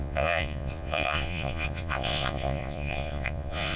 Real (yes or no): no